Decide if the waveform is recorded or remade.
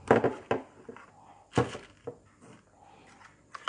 recorded